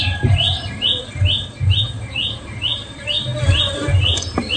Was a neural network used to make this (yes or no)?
yes